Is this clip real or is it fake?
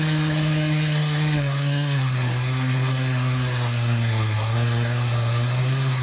fake